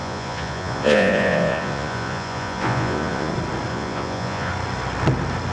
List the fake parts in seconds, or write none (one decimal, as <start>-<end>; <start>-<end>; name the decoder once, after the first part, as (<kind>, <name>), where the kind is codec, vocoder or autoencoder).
0.0-3.3 (vocoder, Vocos); 3.7-4.5